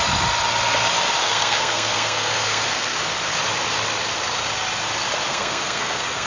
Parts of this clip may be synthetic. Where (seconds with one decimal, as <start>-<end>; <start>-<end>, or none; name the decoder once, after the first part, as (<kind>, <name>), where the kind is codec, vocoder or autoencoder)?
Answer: 1.2-3.0 (codec, SNAC); 5.3-6.3